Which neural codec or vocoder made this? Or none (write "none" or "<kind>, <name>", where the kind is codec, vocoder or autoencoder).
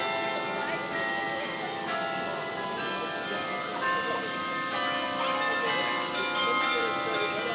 none